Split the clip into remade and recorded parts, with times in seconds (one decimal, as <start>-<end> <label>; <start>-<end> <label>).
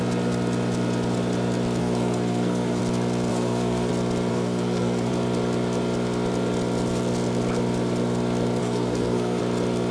0.0-1.8 recorded; 1.8-2.8 remade; 2.8-3.3 recorded; 3.3-3.9 remade; 3.9-4.3 recorded; 4.3-5.1 remade; 5.1-8.6 recorded; 8.6-9.4 remade; 9.4-9.9 recorded